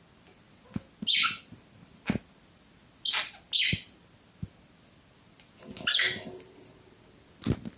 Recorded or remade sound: recorded